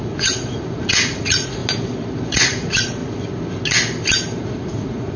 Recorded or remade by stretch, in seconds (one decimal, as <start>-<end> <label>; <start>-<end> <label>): 0.0-1.6 remade; 1.6-2.3 recorded; 2.3-3.0 remade; 3.0-4.4 recorded; 4.4-5.2 remade